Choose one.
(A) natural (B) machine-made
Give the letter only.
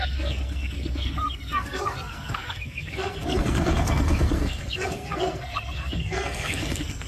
B